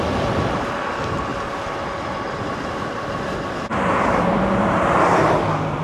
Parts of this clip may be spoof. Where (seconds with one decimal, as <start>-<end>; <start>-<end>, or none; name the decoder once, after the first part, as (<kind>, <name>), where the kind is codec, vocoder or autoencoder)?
none

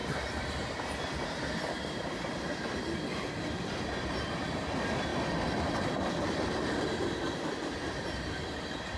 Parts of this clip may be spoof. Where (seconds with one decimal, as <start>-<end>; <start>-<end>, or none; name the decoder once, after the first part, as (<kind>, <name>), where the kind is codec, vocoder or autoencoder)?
0.0-9.0 (vocoder, BigVGAN v2)

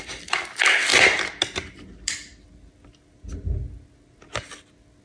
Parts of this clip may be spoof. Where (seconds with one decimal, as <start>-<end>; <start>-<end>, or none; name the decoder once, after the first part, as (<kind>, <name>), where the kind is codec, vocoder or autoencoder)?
none